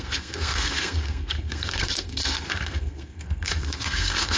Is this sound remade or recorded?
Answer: remade